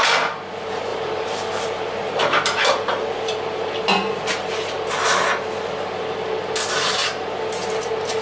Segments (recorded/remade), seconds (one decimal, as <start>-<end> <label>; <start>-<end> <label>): 0.0-0.9 recorded; 0.9-4.9 remade; 4.9-8.2 recorded